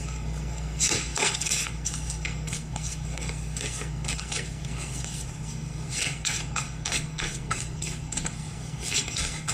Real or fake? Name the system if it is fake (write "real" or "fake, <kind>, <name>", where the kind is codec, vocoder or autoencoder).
fake, codec, SNAC